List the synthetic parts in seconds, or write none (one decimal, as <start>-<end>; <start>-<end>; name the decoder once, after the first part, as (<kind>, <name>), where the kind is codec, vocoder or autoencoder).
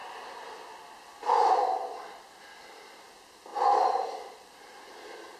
2.7-3.5 (vocoder, BigVGAN v2); 4.3-5.4